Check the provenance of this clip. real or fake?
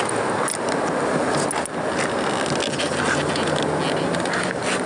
real